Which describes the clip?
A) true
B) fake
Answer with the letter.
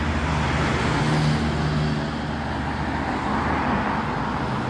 A